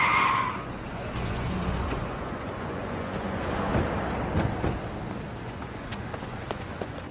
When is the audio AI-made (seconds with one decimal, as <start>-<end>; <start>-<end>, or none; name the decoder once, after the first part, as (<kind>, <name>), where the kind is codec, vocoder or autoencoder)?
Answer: 0.0-3.7 (vocoder, Vocos); 5.4-7.1